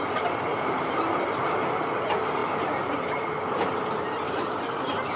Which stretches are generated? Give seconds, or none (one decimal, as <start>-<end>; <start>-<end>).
0.5-1.9; 2.4-4.6